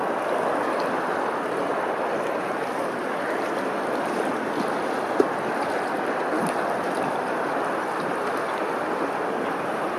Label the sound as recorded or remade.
recorded